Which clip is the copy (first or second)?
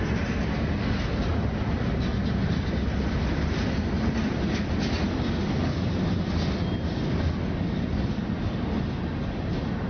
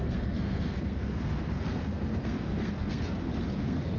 second